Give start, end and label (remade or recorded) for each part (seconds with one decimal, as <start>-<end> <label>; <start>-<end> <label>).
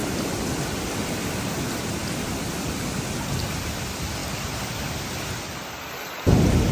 0.0-1.0 remade; 1.0-6.7 recorded